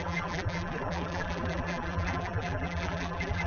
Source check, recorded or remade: remade